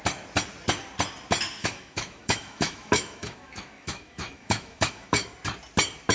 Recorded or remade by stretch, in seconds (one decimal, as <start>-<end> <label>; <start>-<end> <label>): 0.0-1.6 recorded; 1.6-5.3 remade; 5.3-6.1 recorded